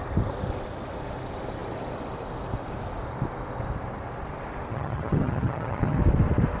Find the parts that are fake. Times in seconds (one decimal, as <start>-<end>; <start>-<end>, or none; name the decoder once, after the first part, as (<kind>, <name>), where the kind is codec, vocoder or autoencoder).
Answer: 4.7-6.0 (vocoder, HiFi-GAN)